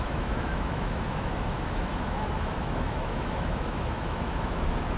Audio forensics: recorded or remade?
remade